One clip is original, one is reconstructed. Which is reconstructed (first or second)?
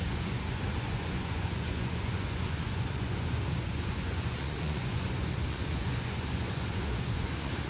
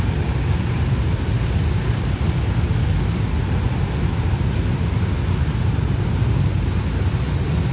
first